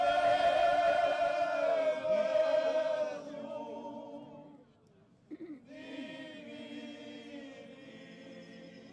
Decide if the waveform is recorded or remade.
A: recorded